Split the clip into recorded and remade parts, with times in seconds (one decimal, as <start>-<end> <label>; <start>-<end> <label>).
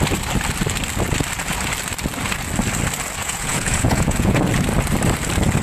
0.0-3.2 recorded; 3.2-4.4 remade; 4.4-5.6 recorded